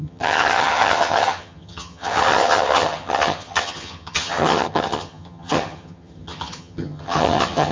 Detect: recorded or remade remade